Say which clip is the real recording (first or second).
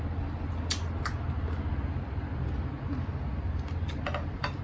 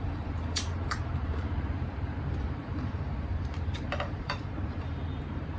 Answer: first